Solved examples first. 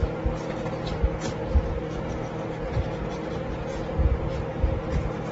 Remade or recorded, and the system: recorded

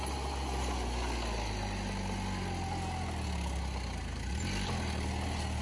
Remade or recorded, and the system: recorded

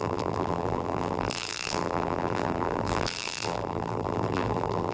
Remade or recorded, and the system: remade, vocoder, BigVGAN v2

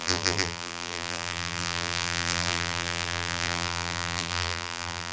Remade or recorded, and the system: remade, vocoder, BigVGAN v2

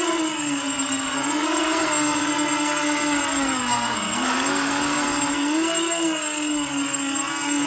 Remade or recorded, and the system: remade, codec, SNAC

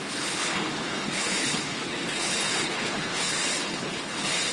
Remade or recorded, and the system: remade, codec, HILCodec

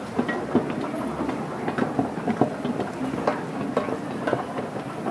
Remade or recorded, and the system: recorded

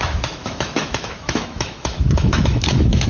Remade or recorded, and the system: remade, autoencoder, DAC-VAE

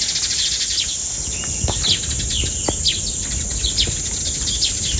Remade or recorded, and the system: recorded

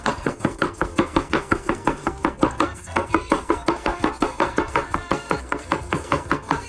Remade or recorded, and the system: remade, codec, SNAC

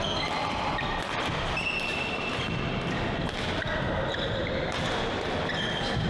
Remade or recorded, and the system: recorded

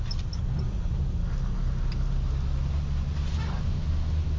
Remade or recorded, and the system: recorded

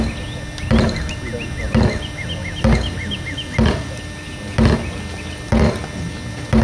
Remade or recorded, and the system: recorded